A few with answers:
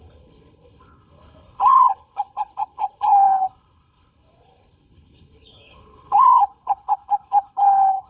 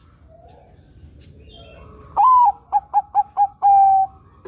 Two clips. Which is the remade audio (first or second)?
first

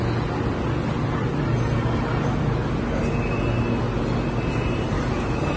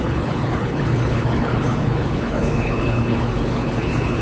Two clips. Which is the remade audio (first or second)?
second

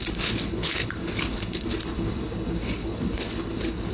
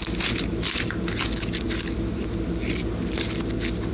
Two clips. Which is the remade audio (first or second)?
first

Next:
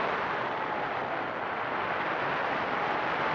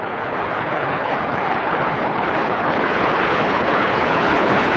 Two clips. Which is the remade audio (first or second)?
second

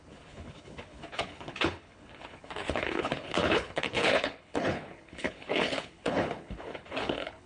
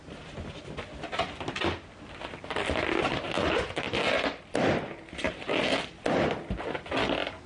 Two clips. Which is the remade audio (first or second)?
first